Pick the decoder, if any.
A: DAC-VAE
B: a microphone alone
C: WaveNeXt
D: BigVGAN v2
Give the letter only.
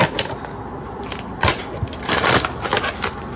B